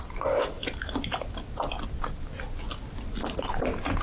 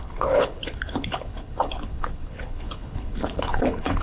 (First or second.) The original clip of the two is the first